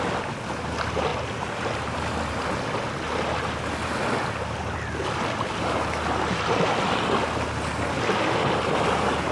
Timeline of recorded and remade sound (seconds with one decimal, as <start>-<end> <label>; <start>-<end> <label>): 0.0-9.3 recorded

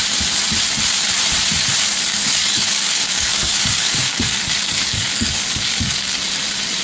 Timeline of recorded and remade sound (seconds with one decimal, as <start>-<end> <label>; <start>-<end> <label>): 0.0-2.4 recorded; 2.4-6.1 remade; 6.1-6.8 recorded

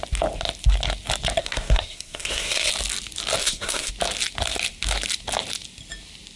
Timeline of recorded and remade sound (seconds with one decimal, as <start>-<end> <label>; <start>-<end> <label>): 0.0-1.4 recorded; 1.4-2.7 remade; 2.7-3.4 recorded; 3.4-3.9 remade; 3.9-6.4 recorded

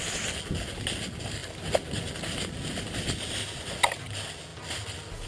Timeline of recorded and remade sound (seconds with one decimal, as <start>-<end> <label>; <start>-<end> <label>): 0.0-5.3 recorded